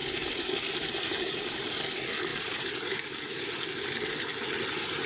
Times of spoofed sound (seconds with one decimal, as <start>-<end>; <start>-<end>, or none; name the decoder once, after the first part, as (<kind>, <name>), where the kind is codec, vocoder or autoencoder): 0.0-1.8 (vocoder, BigVGAN v2); 2.3-3.1